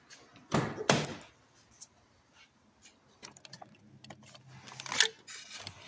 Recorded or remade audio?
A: recorded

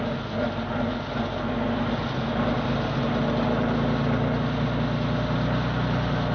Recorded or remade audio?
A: recorded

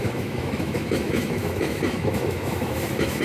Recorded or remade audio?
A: remade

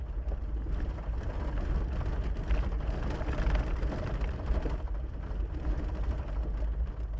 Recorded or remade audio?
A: recorded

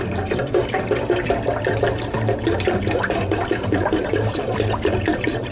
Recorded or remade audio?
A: remade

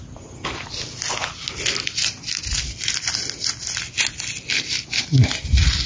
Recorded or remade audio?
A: recorded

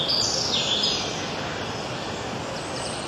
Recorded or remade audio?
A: recorded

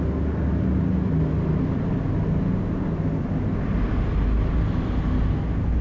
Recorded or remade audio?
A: recorded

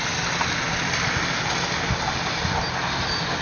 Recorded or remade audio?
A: recorded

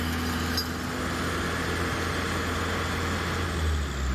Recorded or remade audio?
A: recorded